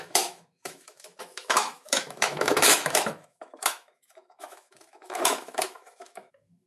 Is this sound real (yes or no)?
no